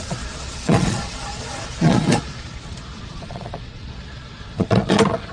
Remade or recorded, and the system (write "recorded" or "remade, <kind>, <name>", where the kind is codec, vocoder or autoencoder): remade, vocoder, Vocos